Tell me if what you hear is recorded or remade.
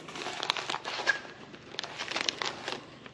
recorded